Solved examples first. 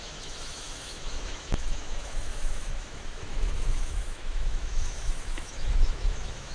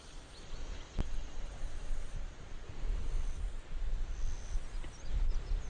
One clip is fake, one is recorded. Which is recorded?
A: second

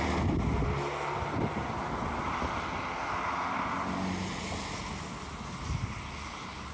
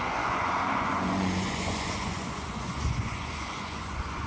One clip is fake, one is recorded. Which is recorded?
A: first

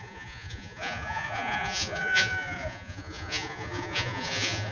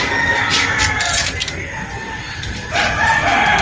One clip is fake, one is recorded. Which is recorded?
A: second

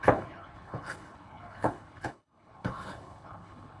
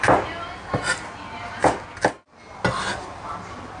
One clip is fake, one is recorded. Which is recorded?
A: second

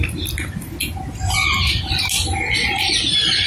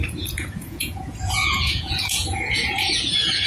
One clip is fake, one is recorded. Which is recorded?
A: first